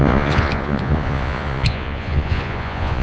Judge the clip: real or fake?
fake